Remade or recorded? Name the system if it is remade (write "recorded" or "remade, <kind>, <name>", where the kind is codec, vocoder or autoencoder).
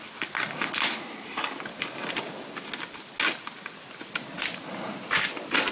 recorded